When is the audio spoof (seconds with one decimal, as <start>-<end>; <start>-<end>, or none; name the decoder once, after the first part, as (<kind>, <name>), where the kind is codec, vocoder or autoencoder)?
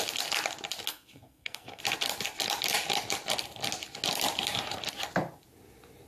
0.9-1.8 (codec, SNAC)